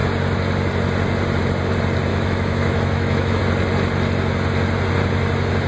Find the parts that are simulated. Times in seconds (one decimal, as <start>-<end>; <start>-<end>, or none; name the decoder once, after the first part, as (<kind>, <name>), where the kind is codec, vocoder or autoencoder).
2.1-3.4 (autoencoder, DAC-VAE)